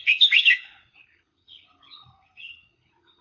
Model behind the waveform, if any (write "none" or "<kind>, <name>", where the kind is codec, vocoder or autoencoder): codec, HILCodec